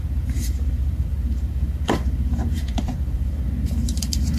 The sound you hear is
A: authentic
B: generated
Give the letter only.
B